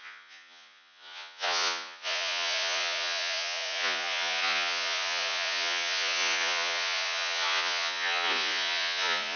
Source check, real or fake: fake